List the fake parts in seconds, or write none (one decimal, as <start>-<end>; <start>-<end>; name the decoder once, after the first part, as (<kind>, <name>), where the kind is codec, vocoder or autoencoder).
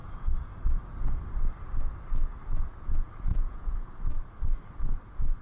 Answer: 3.3-4.0 (vocoder, Vocos)